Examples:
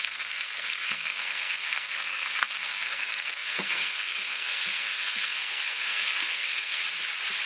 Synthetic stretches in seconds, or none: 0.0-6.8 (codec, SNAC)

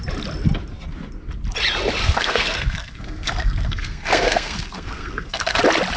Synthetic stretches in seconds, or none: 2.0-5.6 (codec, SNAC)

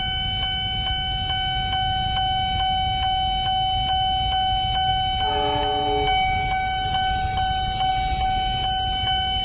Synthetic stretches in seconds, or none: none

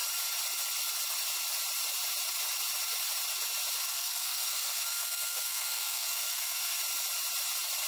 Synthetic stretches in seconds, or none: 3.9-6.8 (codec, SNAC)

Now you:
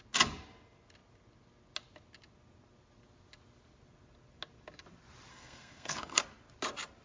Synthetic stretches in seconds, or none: 5.3-6.2 (codec, SNAC)

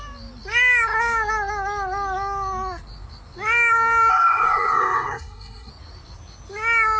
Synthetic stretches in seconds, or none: 4.1-5.7 (codec, SNAC)